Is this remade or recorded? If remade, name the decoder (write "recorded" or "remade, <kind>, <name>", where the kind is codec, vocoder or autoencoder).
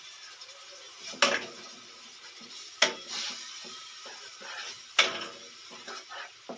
recorded